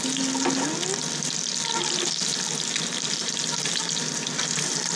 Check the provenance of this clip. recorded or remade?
recorded